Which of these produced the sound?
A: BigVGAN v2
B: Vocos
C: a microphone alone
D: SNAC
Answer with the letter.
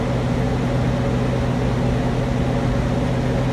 C